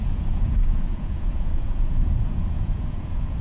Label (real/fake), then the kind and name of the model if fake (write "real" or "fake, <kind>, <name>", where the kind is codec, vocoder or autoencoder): fake, vocoder, Vocos